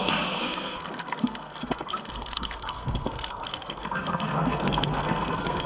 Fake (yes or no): yes